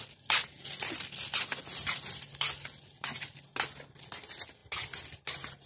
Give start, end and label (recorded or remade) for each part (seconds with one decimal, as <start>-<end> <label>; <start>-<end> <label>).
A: 0.0-5.7 recorded